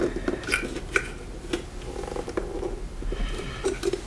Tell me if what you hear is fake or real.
real